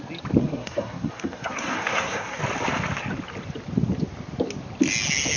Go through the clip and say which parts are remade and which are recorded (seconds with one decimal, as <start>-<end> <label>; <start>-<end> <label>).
0.0-0.4 recorded; 0.4-2.4 remade; 2.4-5.4 recorded